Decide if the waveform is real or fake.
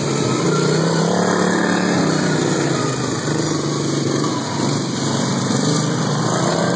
real